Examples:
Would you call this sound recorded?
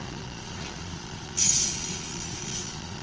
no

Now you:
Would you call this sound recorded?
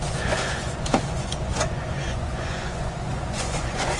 no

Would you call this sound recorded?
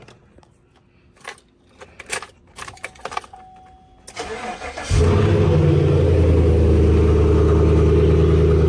yes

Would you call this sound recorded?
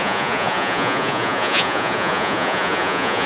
no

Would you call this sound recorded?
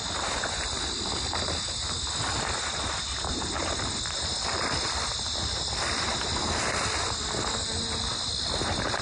yes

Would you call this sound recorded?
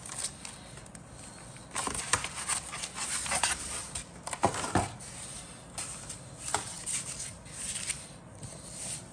yes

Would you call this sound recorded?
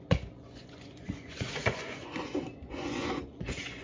no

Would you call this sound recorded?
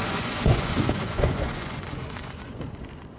no